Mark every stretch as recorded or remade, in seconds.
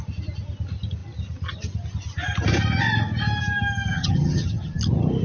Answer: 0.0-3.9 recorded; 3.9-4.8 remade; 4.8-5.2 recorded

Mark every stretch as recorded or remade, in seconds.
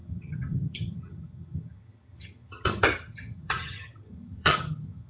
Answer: 0.0-5.1 remade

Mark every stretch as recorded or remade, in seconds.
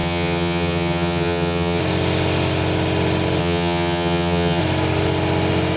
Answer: 0.0-1.8 remade; 1.8-3.4 recorded; 3.4-4.6 remade; 4.6-5.8 recorded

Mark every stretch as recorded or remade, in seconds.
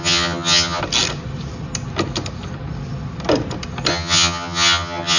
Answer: 0.0-0.8 remade; 0.8-3.9 recorded; 3.9-5.2 remade